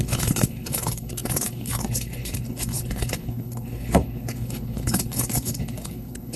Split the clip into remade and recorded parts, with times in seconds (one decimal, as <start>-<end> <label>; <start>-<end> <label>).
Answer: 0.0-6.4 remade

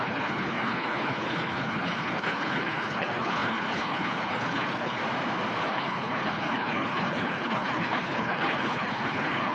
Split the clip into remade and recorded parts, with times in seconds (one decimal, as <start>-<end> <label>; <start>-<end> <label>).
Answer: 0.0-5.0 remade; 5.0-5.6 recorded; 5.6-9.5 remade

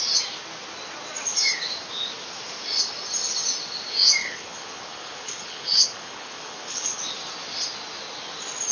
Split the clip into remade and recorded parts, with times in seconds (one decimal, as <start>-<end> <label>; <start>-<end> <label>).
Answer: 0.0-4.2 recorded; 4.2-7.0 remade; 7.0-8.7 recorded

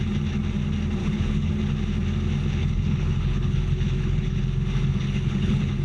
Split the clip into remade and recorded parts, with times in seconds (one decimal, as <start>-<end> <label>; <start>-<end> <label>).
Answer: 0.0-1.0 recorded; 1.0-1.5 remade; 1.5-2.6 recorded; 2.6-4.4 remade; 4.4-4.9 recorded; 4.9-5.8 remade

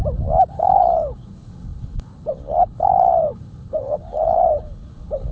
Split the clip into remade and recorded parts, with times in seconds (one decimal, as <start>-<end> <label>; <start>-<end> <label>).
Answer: 0.0-0.5 recorded; 0.5-5.3 remade

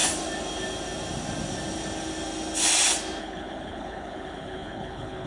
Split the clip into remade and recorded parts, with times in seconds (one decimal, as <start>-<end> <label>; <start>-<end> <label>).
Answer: 0.0-3.2 recorded; 3.2-5.3 remade